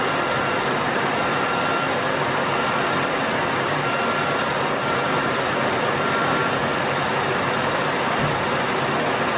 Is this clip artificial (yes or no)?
no